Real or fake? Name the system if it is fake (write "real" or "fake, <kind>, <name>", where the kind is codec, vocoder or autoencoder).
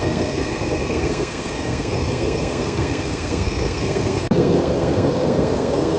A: fake, codec, SNAC